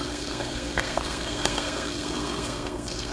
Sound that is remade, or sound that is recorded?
remade